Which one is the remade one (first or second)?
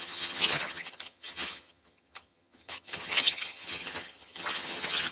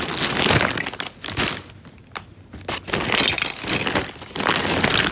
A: first